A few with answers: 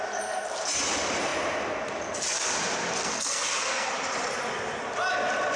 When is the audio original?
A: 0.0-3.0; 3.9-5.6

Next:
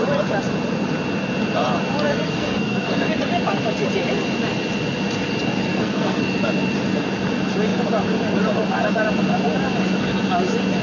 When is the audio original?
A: 0.0-2.1; 3.1-5.7; 6.2-10.8

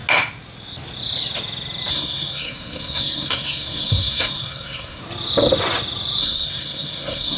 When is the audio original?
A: 0.0-1.9; 5.0-6.2

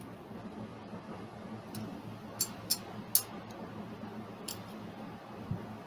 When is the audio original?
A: 0.0-5.9

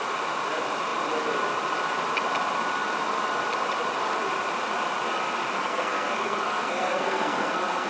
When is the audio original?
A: 0.0-5.6

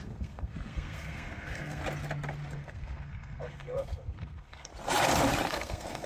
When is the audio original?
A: 1.8-2.5; 4.7-5.5

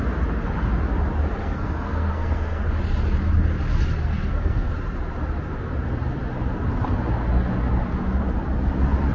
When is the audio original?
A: 0.0-1.4; 2.6-4.0; 4.7-9.1

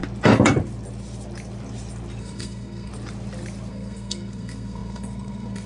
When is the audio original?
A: 0.0-2.2; 2.9-3.7